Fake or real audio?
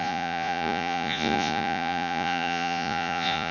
fake